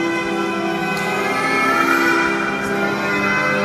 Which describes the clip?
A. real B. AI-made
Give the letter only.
A